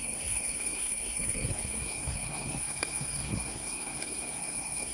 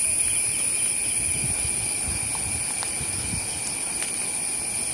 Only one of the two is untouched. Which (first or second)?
second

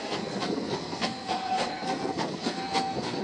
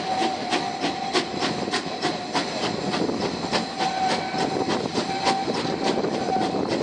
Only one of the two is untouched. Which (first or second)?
second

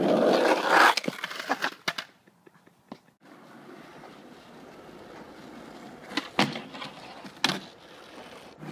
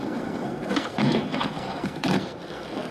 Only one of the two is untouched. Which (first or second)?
first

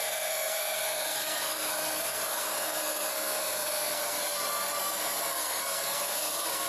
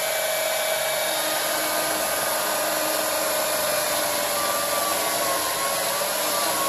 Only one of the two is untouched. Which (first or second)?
second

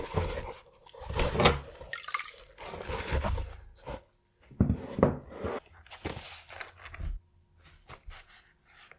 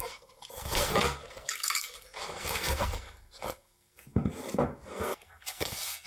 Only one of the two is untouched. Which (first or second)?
first